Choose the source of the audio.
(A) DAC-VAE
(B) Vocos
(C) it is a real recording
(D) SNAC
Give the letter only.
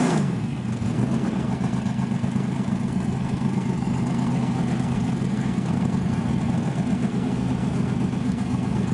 D